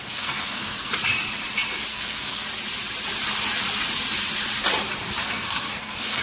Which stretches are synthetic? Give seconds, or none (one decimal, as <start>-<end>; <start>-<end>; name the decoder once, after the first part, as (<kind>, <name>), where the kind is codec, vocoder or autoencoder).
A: 0.0-0.9 (codec, SNAC); 1.9-2.4; 5.2-6.2